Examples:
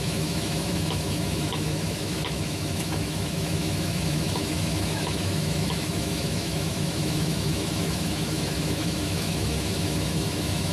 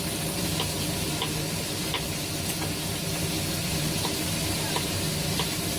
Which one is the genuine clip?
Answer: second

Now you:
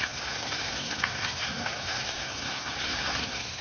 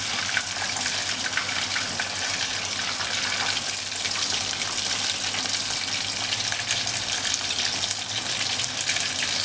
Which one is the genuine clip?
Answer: second